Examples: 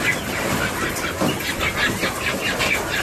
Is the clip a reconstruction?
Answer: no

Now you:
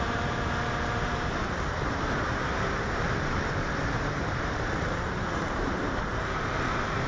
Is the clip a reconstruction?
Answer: yes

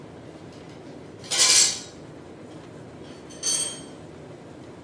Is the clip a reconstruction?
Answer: no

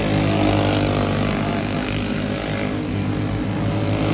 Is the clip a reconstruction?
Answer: no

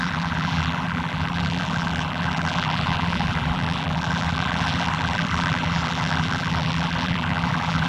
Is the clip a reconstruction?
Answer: yes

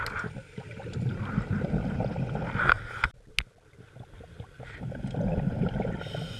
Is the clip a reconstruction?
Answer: no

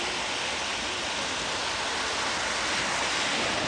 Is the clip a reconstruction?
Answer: no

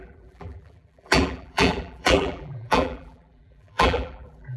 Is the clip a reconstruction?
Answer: yes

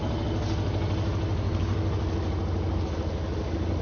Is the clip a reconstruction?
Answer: no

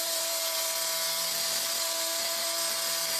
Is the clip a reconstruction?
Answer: yes